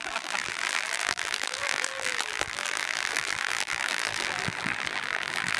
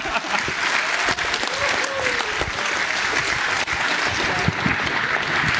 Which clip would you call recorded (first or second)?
second